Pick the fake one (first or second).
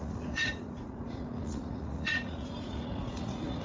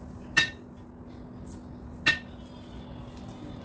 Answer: first